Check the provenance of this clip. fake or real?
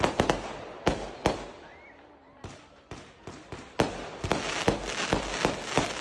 real